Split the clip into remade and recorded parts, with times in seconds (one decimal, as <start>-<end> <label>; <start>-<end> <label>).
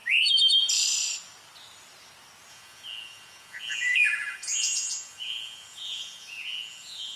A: 0.0-2.5 recorded; 2.5-7.2 remade